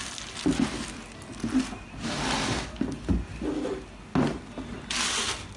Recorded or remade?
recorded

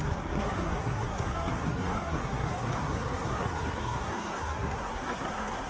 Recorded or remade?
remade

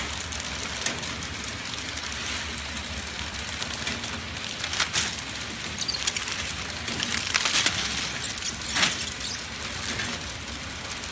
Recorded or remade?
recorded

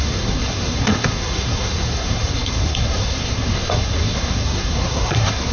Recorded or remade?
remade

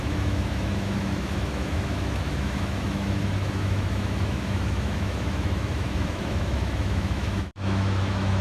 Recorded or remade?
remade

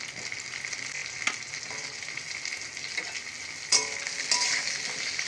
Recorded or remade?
recorded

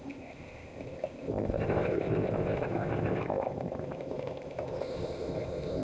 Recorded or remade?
remade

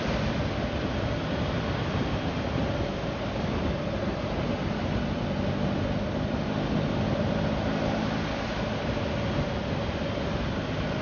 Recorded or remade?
recorded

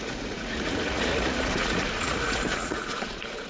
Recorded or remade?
remade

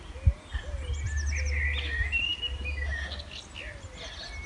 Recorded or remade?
recorded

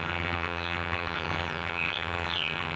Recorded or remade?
remade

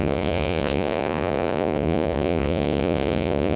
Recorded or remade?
remade